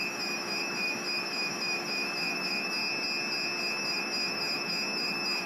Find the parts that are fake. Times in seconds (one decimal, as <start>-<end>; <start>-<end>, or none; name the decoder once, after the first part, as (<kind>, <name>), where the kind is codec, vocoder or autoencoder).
0.0-2.8 (autoencoder, DAC-VAE); 3.6-5.5